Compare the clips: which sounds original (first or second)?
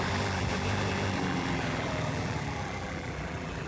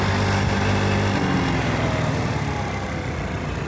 second